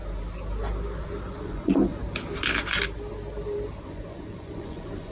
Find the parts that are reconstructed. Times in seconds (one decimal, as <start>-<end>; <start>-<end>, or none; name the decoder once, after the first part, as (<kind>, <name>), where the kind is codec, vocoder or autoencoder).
1.4-1.9 (vocoder, Vocos); 3.8-5.1